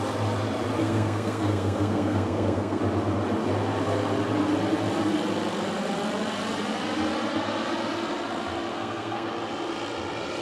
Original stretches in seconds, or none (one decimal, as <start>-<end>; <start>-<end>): 0.0-0.8; 2.8-8.7; 9.3-10.4